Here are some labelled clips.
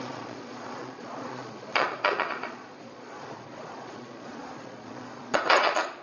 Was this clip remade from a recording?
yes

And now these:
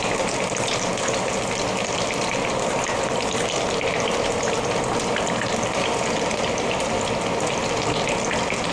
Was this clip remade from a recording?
no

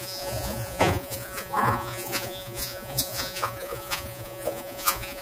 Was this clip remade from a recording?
yes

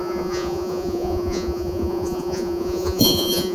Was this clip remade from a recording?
yes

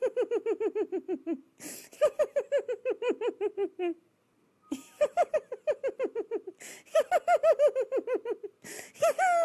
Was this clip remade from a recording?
no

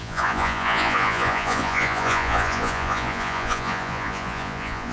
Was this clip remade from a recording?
yes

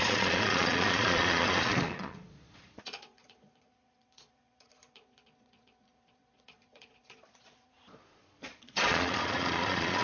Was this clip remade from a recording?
yes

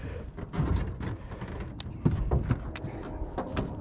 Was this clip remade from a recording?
no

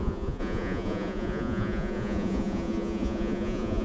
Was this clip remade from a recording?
yes